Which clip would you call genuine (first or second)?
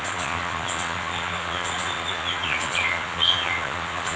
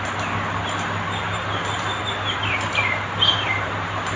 second